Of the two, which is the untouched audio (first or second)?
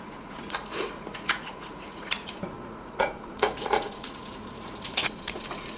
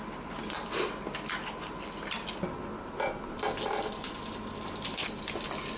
second